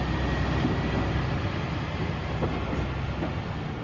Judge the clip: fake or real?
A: real